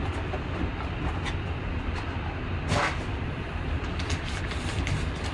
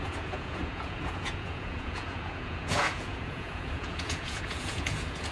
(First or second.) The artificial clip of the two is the second